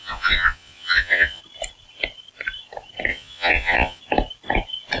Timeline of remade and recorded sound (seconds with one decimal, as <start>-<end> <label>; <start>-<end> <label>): 0.0-1.4 remade; 1.4-3.1 recorded; 3.1-4.0 remade; 4.0-5.0 recorded